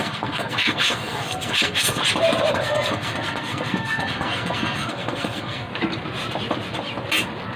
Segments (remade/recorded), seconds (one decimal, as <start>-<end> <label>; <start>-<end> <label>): 0.0-2.0 remade; 2.0-2.5 recorded; 2.5-5.7 remade; 5.7-7.6 recorded